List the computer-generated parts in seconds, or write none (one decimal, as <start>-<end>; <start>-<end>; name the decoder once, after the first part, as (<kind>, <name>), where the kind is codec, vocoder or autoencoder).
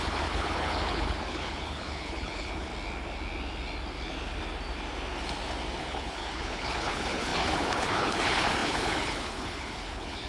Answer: 0.0-2.7 (codec, HILCodec); 5.8-10.3